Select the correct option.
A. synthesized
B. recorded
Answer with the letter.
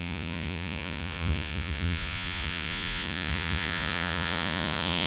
A